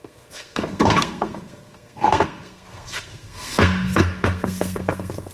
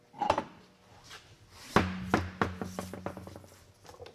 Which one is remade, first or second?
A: first